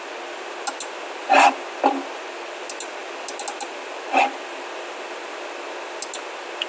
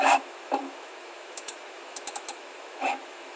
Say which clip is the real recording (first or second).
first